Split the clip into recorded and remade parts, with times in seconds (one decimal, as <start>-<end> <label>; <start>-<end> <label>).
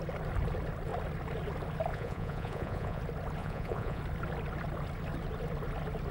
0.0-1.9 recorded; 1.9-3.0 remade; 3.0-3.4 recorded; 3.4-4.0 remade; 4.0-6.1 recorded